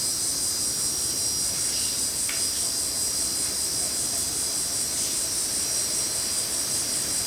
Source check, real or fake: real